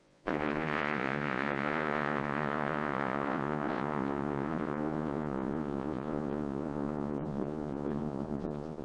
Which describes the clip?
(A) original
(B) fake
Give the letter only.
B